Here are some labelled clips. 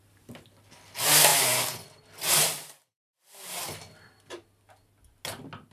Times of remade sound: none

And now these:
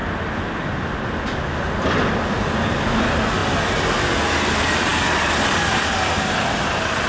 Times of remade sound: none